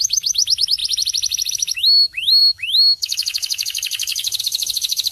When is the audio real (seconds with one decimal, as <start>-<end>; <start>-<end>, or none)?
0.8-1.5